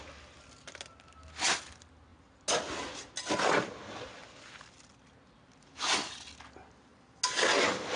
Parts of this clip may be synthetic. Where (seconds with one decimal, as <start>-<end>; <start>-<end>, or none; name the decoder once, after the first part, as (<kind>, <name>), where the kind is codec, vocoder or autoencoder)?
none